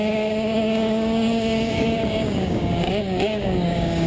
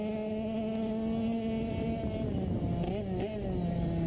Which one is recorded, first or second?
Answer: second